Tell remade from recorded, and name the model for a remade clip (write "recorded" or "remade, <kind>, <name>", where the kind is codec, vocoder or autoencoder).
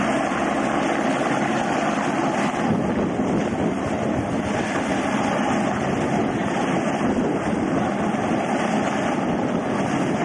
recorded